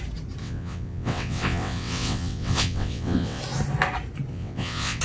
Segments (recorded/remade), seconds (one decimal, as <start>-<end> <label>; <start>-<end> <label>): 0.0-0.4 recorded; 0.4-3.4 remade; 3.4-4.3 recorded; 4.3-5.0 remade